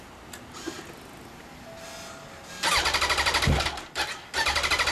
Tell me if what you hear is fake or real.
real